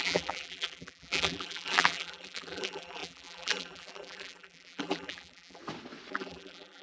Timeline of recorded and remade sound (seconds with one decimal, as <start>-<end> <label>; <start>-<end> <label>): 0.0-5.6 remade; 5.6-6.1 recorded; 6.1-6.8 remade